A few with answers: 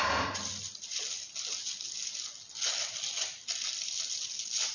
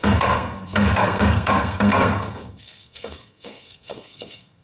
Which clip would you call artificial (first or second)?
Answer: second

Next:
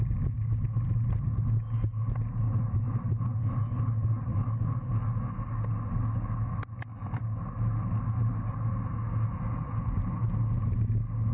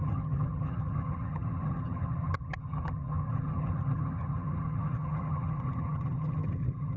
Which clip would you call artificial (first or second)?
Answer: second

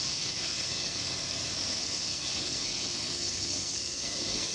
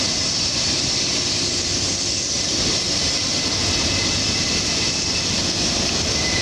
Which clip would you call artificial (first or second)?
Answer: first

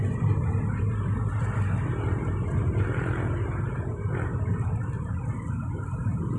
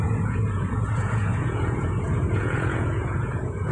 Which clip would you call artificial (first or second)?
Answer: second